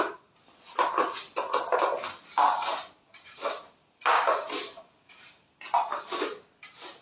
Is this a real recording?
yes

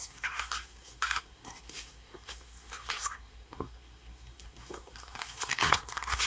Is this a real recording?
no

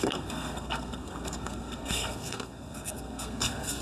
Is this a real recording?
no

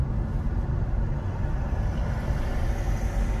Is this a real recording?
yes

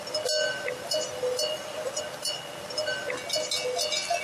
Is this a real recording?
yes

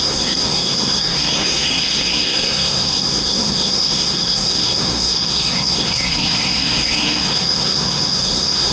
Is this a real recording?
no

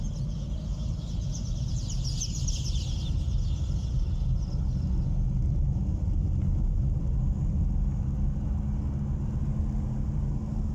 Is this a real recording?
yes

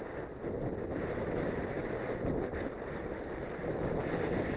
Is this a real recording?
yes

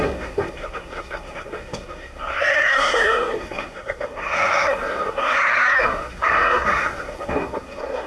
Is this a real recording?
no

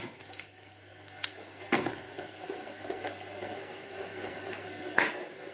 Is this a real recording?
no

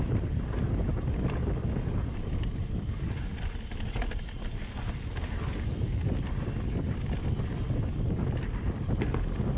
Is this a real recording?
yes